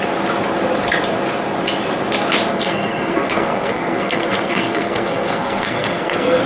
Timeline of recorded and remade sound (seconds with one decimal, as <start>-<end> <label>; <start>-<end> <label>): 0.0-2.5 recorded; 2.5-6.5 remade